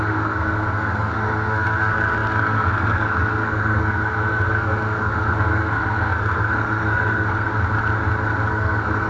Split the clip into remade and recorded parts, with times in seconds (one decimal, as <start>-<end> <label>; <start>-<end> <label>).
0.0-7.5 remade; 7.5-8.5 recorded; 8.5-9.1 remade